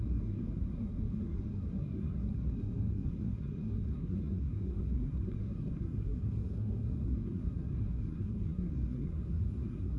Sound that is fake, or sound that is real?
fake